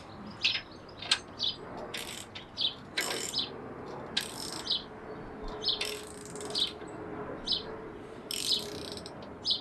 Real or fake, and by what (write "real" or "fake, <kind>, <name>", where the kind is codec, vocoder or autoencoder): real